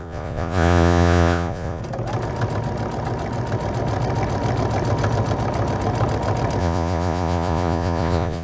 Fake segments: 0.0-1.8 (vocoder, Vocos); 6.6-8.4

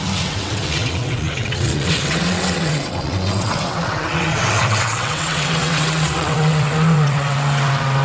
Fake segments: 0.0-8.0 (vocoder, WaveNeXt)

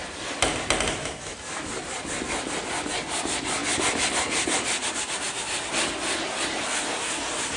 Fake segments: 1.0-1.7 (autoencoder, DAC-VAE)